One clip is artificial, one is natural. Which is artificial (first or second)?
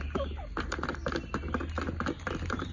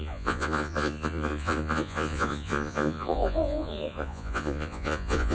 second